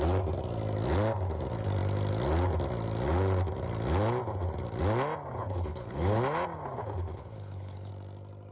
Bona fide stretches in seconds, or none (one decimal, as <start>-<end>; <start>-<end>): 0.0-5.4; 6.2-6.8; 7.9-8.5